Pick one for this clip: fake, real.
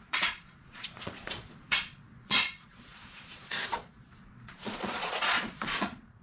fake